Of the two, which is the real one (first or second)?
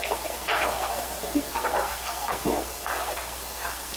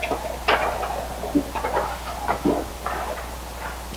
second